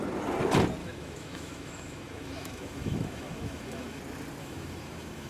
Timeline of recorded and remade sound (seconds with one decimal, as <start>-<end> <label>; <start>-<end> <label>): 0.0-0.8 recorded; 0.8-4.0 remade; 4.0-4.4 recorded; 4.4-5.3 remade

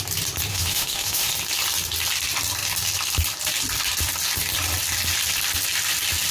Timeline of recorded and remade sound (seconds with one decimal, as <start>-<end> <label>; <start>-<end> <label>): 0.0-0.5 recorded; 0.5-1.3 remade; 1.3-6.3 recorded

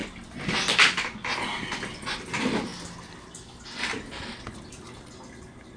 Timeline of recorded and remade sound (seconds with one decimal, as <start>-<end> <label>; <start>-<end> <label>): 0.0-5.8 recorded

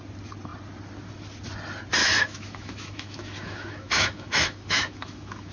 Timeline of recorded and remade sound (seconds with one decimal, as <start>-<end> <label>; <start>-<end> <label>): 0.0-2.0 recorded; 2.0-5.5 remade

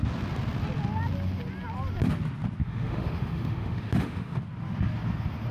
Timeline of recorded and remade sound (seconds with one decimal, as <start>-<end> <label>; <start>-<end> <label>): 0.0-2.6 recorded; 2.6-4.4 remade; 4.4-5.5 recorded